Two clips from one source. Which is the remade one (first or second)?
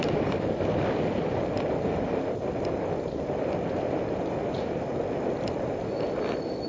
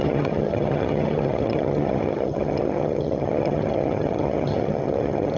second